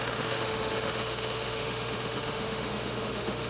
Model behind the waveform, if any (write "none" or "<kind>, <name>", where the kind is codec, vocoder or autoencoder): autoencoder, DAC-VAE